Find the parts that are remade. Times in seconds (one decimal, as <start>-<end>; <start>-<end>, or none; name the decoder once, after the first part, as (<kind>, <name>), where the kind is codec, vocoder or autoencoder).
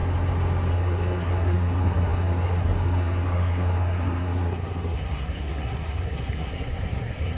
0.7-7.4 (codec, SNAC)